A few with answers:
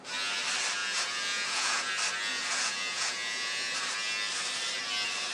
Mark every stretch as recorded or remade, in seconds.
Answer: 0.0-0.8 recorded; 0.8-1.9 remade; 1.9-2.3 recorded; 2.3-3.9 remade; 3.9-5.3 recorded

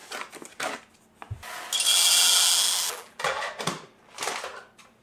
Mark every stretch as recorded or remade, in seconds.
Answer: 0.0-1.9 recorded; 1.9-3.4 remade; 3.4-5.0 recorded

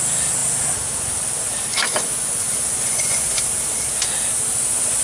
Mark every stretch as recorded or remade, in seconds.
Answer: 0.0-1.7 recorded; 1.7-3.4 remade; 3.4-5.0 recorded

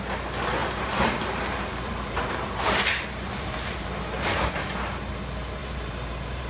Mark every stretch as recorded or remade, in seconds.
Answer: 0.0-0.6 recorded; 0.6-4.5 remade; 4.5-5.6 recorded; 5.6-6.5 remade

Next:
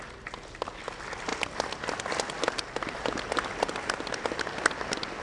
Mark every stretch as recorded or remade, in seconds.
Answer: 0.0-5.2 recorded

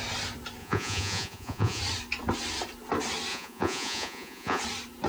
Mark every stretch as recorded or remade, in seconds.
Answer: 0.0-0.6 recorded; 0.6-1.8 remade; 1.8-3.3 recorded; 3.3-4.6 remade; 4.6-5.1 recorded